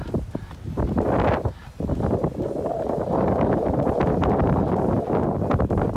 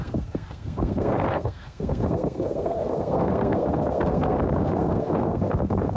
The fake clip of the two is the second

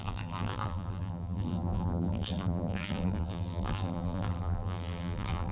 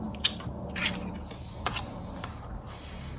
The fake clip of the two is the first